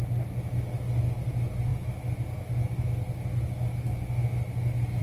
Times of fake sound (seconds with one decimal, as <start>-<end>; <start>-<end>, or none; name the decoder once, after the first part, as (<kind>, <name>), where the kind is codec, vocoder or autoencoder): none